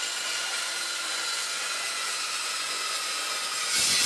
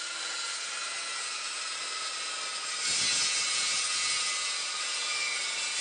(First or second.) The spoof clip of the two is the first